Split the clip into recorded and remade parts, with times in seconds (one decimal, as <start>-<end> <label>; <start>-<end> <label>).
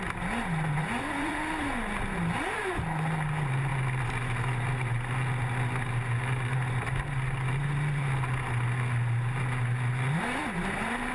0.0-0.8 recorded; 0.8-1.3 remade; 1.3-11.1 recorded